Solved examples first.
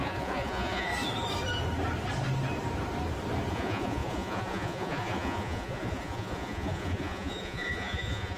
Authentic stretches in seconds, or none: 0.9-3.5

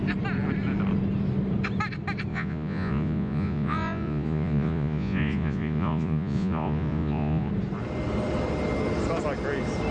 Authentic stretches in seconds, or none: 0.0-2.3; 7.5-9.9

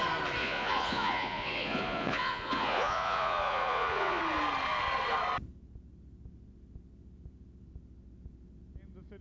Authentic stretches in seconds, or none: 0.0-0.4; 4.2-9.2

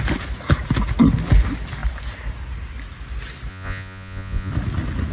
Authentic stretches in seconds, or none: 0.0-3.5; 4.5-5.1

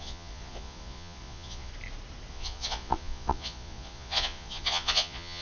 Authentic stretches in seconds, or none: 1.7-2.3

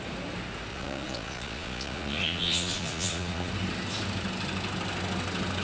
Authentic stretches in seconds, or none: 0.0-0.7; 3.5-5.6

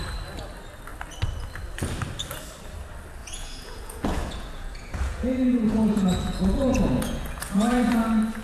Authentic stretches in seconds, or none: 0.0-3.2; 7.9-8.4